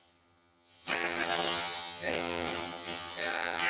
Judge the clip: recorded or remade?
remade